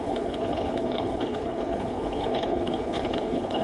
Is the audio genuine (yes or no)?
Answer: no